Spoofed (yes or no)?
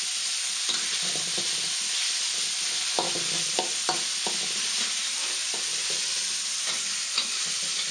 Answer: no